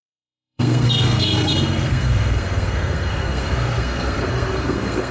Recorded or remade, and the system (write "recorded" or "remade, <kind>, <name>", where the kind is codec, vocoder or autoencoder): remade, codec, SNAC